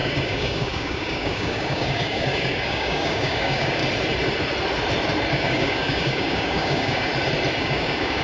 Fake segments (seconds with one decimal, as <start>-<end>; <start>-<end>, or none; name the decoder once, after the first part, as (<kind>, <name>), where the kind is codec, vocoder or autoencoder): 0.0-3.8 (codec, DAC); 5.3-7.1; 7.6-8.2